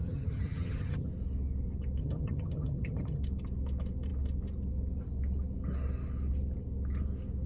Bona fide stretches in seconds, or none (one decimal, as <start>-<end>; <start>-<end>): 1.1-2.0; 3.2-7.5